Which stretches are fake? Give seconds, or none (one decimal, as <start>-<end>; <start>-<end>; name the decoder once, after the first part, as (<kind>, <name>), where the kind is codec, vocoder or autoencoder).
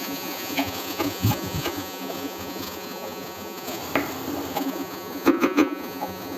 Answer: 0.0-3.8 (vocoder, Vocos); 4.5-6.4